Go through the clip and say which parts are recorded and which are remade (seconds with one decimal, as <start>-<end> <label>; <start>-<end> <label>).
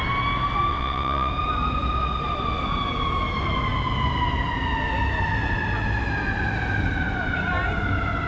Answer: 0.0-0.7 recorded; 0.7-1.3 remade; 1.3-8.3 recorded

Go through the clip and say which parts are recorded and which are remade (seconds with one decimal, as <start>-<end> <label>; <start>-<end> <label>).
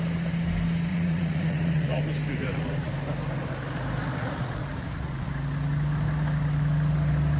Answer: 0.0-0.9 recorded; 0.9-2.0 remade; 2.0-2.4 recorded; 2.4-2.9 remade; 2.9-4.2 recorded; 4.2-5.3 remade; 5.3-7.4 recorded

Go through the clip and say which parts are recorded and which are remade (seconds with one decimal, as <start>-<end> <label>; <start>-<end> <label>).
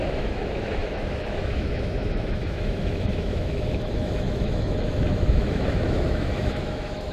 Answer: 0.0-7.1 remade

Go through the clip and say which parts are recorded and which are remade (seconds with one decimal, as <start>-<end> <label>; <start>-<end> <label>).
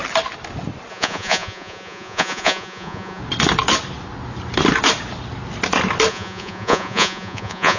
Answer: 0.0-0.9 recorded; 0.9-3.2 remade; 3.2-6.1 recorded; 6.1-7.8 remade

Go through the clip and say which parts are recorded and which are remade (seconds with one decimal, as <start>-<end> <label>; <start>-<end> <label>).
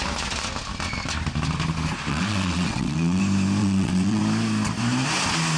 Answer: 0.0-2.1 recorded; 2.1-3.2 remade; 3.2-3.6 recorded; 3.6-4.2 remade; 4.2-5.6 recorded